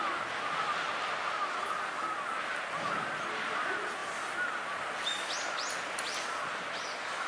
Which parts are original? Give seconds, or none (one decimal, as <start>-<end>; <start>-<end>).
0.0-7.3